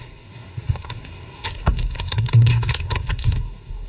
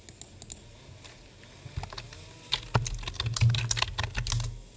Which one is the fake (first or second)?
first